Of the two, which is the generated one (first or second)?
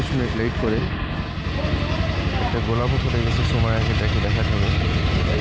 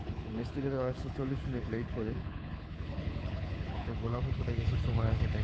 second